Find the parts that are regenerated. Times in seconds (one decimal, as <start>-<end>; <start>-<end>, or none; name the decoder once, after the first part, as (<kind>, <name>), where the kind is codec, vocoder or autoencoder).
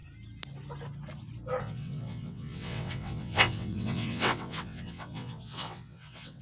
1.6-6.4 (vocoder, WaveNeXt)